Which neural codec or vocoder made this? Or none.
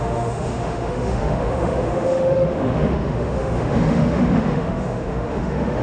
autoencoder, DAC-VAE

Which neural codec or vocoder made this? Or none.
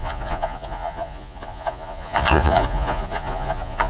vocoder, Vocos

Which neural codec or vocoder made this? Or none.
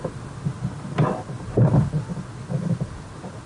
none